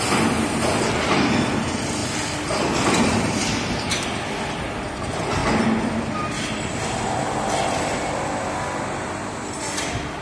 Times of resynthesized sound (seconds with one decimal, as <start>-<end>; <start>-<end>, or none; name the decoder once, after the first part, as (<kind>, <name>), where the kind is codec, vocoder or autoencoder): none